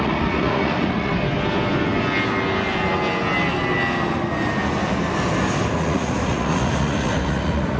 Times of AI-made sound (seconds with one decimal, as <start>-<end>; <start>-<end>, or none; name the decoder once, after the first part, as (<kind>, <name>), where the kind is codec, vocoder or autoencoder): 0.0-1.1 (vocoder, Vocos); 5.7-7.8